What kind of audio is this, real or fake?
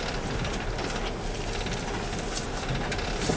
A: real